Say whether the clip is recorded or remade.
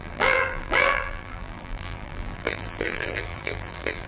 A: remade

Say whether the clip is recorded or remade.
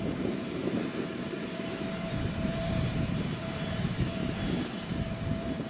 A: remade